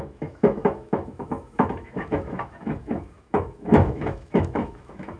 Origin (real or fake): fake